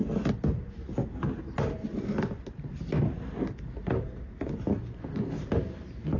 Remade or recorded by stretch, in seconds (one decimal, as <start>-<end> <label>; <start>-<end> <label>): 0.0-6.2 recorded